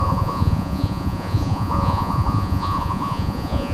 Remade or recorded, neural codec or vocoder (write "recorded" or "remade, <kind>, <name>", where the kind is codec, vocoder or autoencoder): remade, vocoder, Vocos